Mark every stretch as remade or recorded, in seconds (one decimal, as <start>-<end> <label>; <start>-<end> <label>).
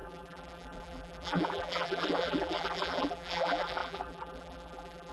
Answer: 0.0-5.1 remade